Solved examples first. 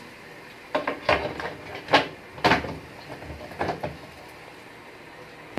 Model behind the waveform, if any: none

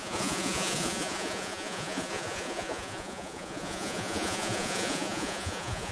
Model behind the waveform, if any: vocoder, Vocos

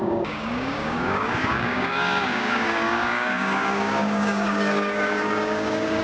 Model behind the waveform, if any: codec, DAC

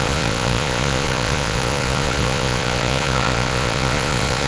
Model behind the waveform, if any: vocoder, Vocos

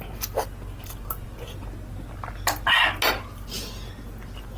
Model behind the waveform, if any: none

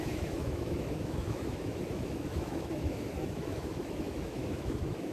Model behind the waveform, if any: autoencoder, DAC-VAE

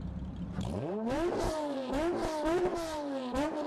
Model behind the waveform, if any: vocoder, BigVGAN v2